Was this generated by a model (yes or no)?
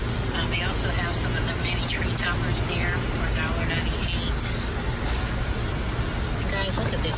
no